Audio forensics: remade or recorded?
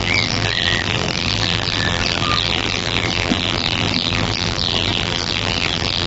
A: remade